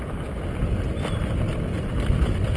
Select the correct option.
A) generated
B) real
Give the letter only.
B